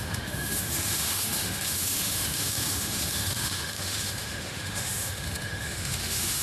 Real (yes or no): no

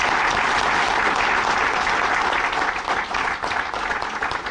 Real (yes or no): yes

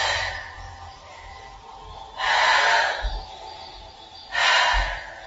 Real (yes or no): yes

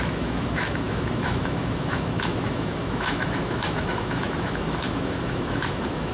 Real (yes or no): no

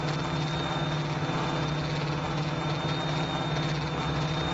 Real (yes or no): yes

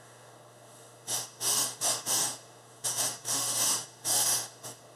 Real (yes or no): no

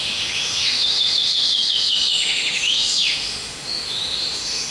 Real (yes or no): no